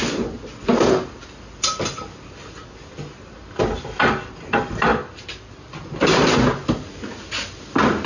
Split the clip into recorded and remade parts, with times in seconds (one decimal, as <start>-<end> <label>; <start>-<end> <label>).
0.0-8.1 recorded

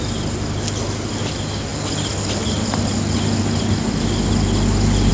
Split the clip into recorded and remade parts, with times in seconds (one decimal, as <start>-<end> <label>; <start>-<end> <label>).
0.0-5.1 recorded

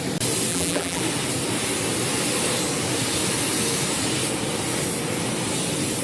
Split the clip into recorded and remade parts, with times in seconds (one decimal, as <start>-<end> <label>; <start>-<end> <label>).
0.0-0.5 recorded; 0.5-1.0 remade; 1.0-6.0 recorded

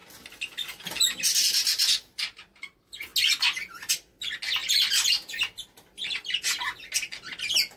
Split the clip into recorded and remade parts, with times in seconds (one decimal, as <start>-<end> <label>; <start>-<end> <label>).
0.0-7.8 recorded

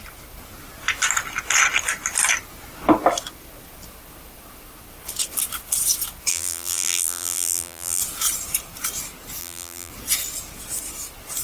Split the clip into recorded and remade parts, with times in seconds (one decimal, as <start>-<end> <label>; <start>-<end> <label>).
0.0-6.3 recorded; 6.3-8.0 remade; 8.0-9.4 recorded; 9.4-9.9 remade; 9.9-11.4 recorded

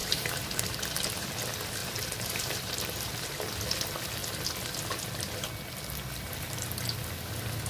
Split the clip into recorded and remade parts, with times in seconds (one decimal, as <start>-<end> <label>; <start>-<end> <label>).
0.0-0.6 remade; 0.6-1.8 recorded; 1.8-3.5 remade; 3.5-7.7 recorded

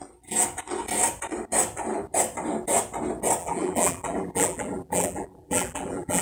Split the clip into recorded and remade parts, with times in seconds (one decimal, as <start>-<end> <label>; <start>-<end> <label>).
0.0-3.4 recorded; 3.4-6.2 remade

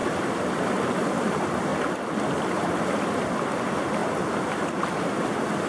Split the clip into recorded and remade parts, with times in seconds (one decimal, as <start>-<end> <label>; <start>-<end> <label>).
0.0-1.7 remade; 1.7-2.3 recorded; 2.3-5.7 remade